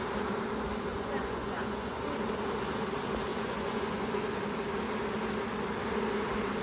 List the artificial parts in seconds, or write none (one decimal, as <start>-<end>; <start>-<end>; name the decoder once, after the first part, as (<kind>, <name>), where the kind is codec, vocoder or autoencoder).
0.9-2.0 (vocoder, Vocos); 3.3-4.2